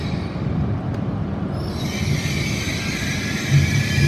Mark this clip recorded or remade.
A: recorded